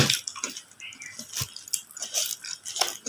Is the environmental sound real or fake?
real